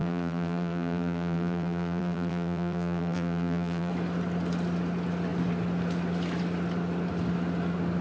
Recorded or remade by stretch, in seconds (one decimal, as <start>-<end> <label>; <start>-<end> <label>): 0.0-3.9 remade; 3.9-8.0 recorded